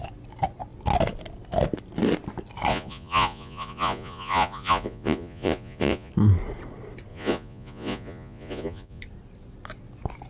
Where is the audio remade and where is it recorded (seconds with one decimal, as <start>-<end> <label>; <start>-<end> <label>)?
0.0-2.7 recorded; 2.7-6.1 remade; 6.1-7.1 recorded; 7.1-9.0 remade; 9.0-10.3 recorded